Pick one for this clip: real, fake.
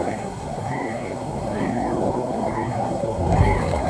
fake